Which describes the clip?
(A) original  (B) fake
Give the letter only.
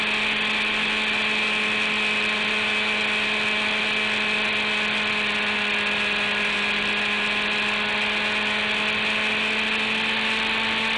A